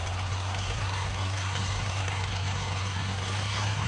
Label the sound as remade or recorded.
remade